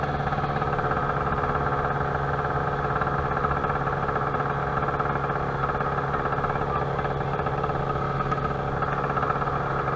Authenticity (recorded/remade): recorded